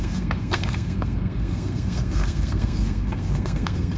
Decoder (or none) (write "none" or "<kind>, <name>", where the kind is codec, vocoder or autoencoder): codec, SNAC